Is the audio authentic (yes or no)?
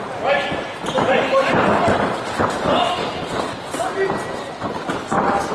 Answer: yes